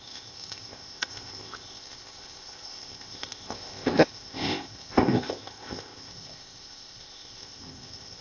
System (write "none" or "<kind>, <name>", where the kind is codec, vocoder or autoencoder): codec, ZipCodec